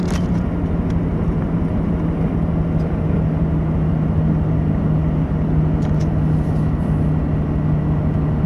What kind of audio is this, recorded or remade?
recorded